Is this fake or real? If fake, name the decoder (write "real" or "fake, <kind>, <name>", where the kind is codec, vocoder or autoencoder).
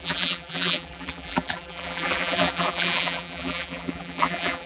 fake, vocoder, BigVGAN v2